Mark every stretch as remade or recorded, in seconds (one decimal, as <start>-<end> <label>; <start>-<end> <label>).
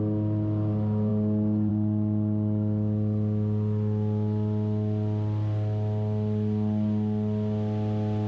0.0-8.3 recorded